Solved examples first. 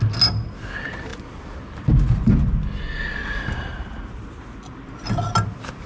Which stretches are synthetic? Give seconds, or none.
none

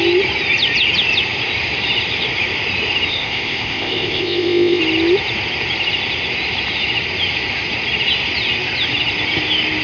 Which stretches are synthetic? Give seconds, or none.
3.1-4.8 (codec, ZipCodec)